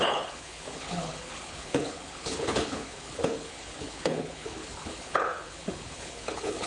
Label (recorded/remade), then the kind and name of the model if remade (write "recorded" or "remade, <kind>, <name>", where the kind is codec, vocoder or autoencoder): remade, codec, HILCodec